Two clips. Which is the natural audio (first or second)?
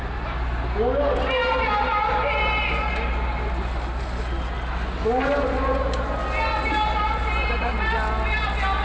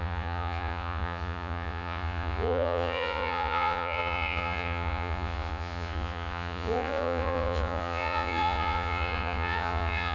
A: first